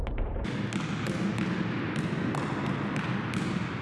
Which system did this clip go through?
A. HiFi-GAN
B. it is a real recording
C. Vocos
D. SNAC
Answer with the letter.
B